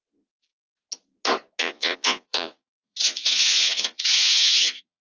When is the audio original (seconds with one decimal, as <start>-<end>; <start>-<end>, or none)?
0.5-1.6